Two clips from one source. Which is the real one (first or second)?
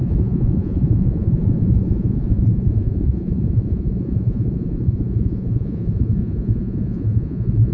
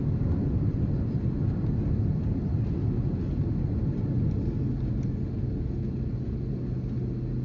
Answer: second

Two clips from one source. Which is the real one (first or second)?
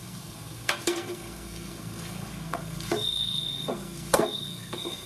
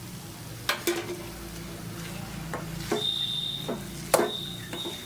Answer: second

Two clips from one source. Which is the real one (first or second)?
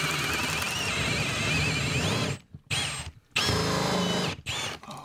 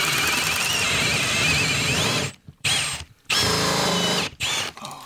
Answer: first